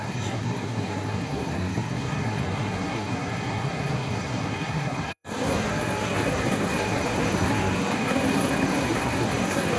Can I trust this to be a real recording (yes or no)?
no